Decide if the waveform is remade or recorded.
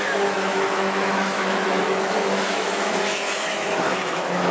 remade